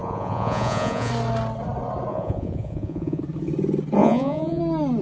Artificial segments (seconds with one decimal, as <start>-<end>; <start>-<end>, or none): 0.0-1.1; 2.1-3.2; 4.0-4.6